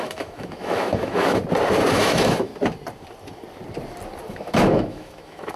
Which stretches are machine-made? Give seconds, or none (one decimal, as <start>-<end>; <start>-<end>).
0.0-1.4; 1.9-2.5; 4.3-5.6